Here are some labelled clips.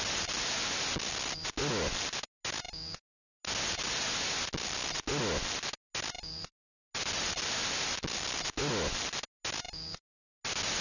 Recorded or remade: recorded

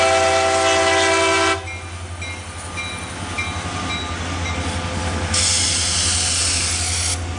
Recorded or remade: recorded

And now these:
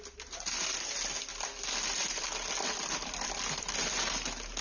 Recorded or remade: recorded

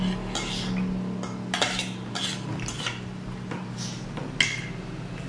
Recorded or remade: recorded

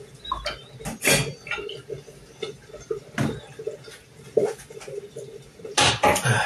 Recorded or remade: recorded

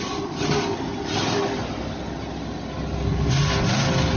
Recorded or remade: recorded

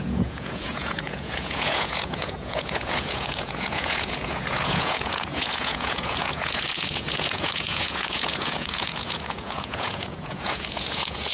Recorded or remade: remade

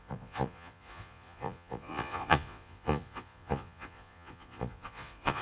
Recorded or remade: remade